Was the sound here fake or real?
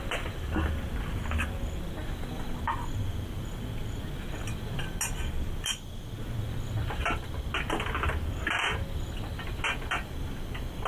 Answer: real